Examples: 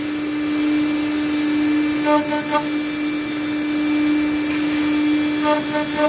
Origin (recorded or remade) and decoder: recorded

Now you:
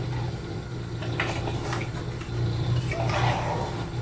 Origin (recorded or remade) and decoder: recorded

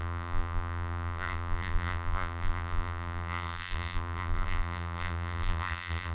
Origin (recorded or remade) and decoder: remade, vocoder, BigVGAN v2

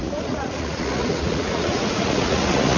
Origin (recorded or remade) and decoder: remade, vocoder, Vocos